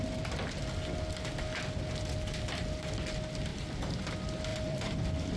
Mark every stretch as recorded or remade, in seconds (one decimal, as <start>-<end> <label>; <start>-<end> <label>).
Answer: 0.0-3.5 recorded; 3.5-4.1 remade; 4.1-4.5 recorded; 4.5-5.4 remade